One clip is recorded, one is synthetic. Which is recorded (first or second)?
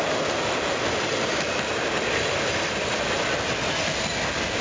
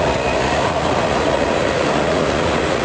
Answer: first